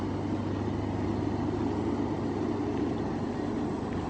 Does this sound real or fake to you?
real